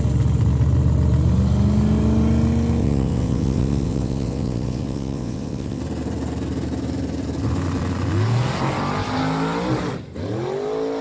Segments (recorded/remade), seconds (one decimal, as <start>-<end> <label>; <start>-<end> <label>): 0.0-2.8 recorded; 2.8-5.8 remade; 5.8-11.0 recorded